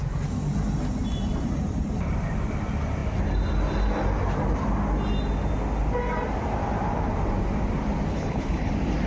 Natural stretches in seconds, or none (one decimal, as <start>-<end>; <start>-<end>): 0.0-8.1; 8.7-9.1